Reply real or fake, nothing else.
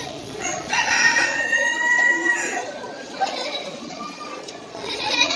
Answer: fake